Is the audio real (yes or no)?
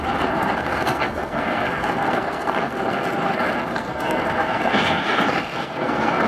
no